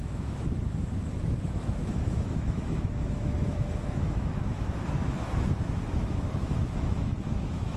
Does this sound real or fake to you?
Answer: fake